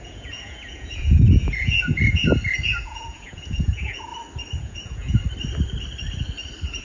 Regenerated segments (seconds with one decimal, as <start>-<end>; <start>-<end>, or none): 0.0-2.3; 2.8-4.1; 4.6-5.2